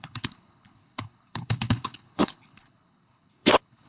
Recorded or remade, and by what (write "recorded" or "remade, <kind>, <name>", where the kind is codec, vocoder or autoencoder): remade, codec, HILCodec